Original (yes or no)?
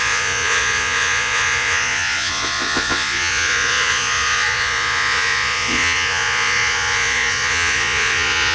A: no